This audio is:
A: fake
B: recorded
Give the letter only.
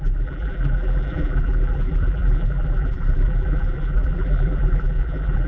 A